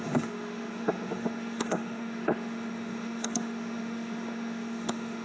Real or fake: fake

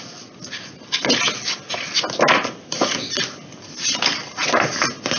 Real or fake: real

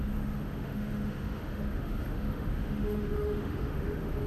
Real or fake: fake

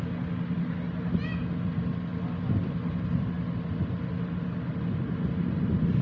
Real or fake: real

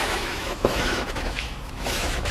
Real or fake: fake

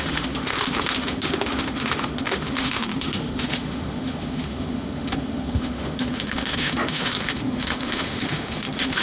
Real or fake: fake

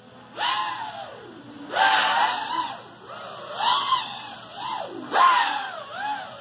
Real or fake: real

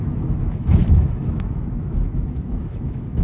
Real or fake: fake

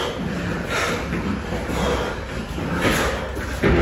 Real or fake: real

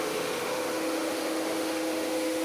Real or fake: fake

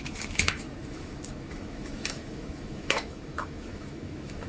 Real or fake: fake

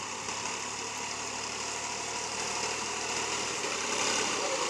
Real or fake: real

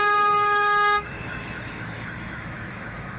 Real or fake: fake